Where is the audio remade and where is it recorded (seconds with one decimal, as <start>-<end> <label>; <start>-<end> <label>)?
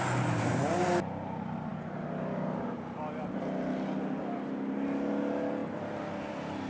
0.0-6.7 recorded